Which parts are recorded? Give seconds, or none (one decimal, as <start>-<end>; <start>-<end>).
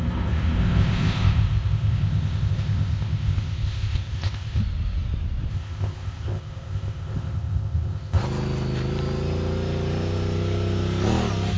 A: 4.6-5.5; 8.2-11.6